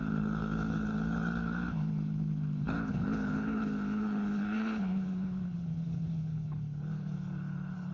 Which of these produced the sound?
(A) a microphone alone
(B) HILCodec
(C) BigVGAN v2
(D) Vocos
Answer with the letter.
B